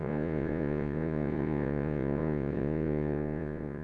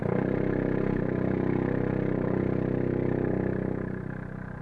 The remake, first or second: first